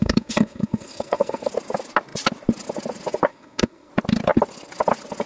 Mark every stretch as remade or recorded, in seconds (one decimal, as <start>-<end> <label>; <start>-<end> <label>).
0.0-1.5 remade; 1.5-3.3 recorded; 3.3-3.9 remade; 3.9-5.3 recorded